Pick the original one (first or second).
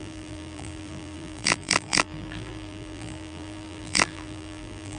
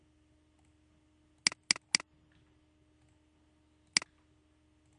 second